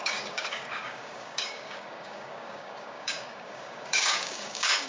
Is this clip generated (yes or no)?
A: yes